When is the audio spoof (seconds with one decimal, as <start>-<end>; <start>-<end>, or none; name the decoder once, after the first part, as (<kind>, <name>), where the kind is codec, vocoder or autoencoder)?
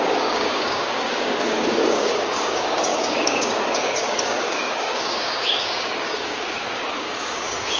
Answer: 0.0-7.8 (codec, DAC)